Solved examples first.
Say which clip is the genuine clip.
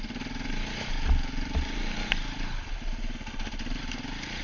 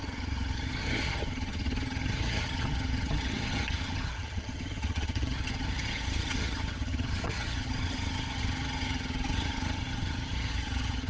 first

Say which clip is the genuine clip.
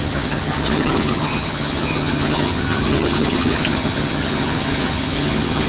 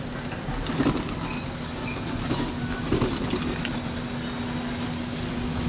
second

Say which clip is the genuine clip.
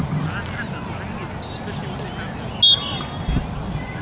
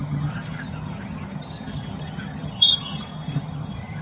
first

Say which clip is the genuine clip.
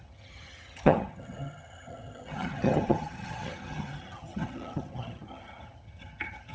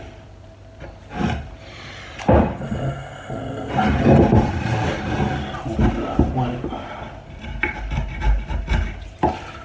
second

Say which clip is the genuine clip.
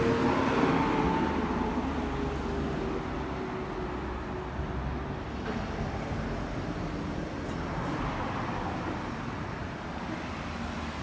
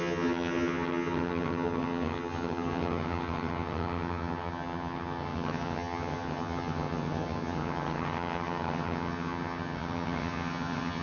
first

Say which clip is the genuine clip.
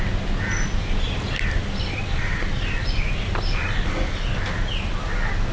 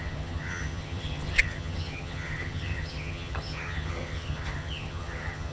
first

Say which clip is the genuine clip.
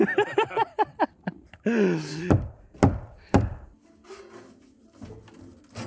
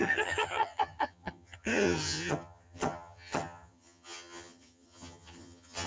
first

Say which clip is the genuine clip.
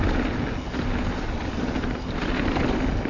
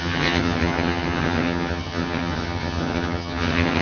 first